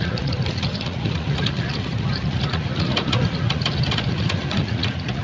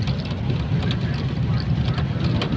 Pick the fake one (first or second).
first